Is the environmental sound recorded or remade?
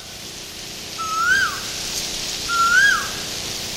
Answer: recorded